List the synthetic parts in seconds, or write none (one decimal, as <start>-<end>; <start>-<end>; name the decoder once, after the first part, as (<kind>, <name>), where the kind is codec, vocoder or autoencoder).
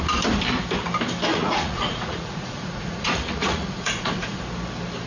1.3-4.4 (vocoder, Vocos)